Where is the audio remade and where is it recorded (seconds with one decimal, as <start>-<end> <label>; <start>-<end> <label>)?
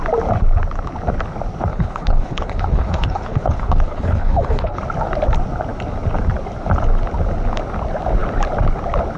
0.0-1.7 recorded; 1.7-4.8 remade; 4.8-9.2 recorded